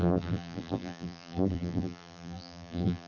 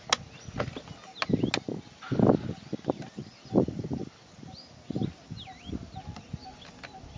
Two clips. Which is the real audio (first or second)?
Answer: second